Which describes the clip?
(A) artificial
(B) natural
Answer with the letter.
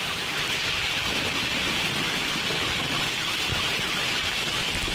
B